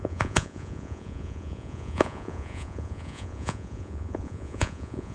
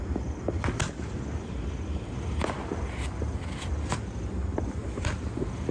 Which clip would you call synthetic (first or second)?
first